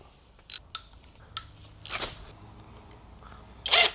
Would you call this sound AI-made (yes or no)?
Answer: no